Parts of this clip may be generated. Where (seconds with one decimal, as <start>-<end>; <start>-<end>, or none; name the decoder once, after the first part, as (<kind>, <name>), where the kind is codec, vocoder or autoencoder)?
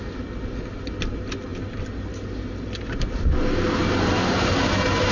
none